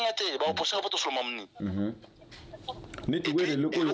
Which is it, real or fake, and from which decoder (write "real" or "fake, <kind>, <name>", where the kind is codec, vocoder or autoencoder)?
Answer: real